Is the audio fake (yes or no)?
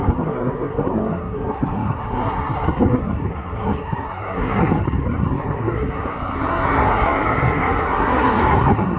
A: yes